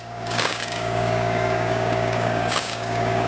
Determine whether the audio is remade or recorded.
remade